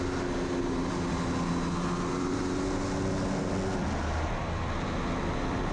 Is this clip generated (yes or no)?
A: no